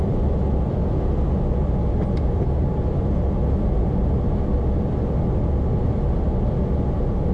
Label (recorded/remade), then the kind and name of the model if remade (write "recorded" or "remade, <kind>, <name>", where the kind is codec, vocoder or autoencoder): recorded